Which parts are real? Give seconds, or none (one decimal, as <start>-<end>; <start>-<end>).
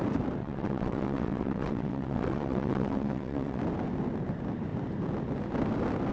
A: 0.0-0.4; 3.6-6.1